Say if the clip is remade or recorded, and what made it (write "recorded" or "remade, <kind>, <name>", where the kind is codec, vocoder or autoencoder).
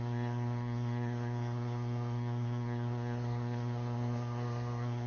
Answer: remade, codec, SNAC